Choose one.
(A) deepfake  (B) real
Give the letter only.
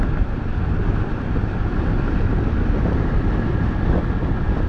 B